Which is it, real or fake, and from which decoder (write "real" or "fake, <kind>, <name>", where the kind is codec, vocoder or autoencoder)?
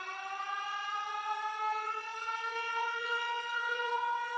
fake, vocoder, WaveNeXt